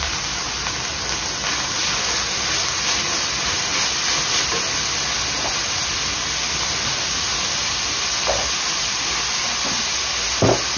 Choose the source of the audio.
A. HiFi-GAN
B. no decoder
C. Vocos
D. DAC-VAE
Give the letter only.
B